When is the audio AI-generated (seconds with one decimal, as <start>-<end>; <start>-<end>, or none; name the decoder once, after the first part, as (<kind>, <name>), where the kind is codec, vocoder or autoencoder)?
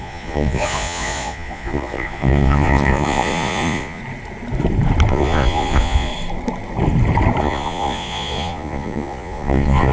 0.0-4.0 (vocoder, Vocos); 5.1-6.1; 7.4-9.9